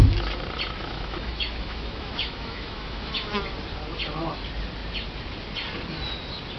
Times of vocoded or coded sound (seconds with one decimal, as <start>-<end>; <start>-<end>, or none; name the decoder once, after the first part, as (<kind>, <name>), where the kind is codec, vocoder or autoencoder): 0.8-3.3 (autoencoder, DAC-VAE)